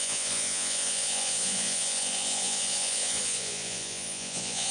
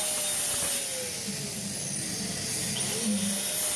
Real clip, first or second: second